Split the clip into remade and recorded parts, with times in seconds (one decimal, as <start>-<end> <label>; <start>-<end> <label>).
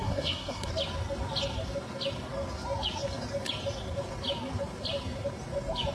0.0-0.7 remade; 0.7-5.9 recorded